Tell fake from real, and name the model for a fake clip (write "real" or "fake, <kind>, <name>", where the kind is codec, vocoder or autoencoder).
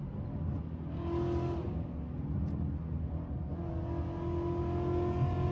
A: real